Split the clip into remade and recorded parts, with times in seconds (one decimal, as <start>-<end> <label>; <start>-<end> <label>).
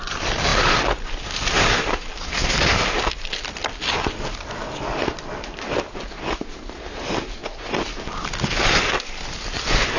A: 0.0-10.0 recorded